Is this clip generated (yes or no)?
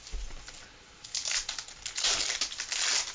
no